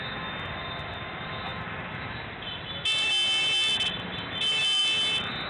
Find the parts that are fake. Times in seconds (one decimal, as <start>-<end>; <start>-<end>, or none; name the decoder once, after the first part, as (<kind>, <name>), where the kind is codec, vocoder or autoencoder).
none